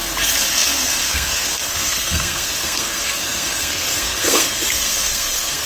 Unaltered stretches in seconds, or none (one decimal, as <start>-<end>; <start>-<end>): 0.0-0.5